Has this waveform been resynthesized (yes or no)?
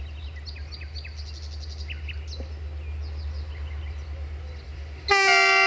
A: no